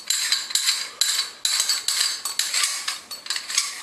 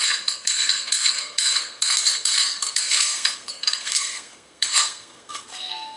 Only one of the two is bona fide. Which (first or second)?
first